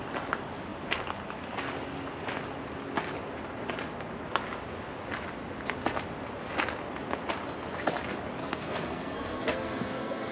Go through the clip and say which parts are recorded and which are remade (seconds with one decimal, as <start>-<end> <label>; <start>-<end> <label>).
0.0-8.4 recorded; 8.4-10.3 remade